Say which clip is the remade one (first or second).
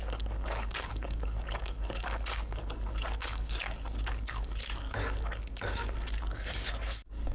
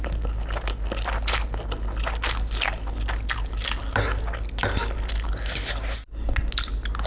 first